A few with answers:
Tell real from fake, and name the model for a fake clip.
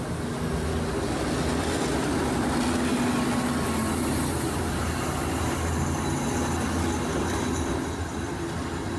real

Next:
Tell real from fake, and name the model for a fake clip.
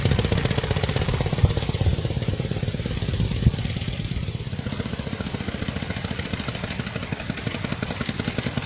fake, vocoder, BigVGAN v2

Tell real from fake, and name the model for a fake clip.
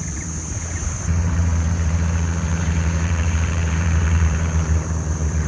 fake, vocoder, BigVGAN v2